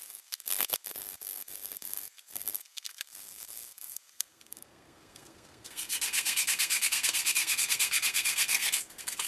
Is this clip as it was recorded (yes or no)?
no